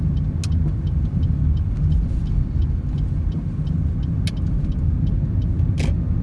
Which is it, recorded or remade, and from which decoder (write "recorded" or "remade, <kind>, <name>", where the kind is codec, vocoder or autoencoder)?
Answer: recorded